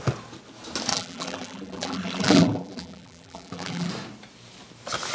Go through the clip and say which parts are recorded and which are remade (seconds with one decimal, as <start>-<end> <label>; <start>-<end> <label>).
0.0-0.9 recorded; 0.9-3.9 remade; 3.9-5.1 recorded